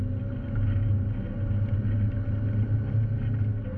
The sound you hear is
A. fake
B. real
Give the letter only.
B